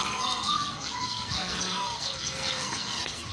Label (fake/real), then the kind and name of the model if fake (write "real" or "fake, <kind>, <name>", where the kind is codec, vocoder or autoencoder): fake, codec, SNAC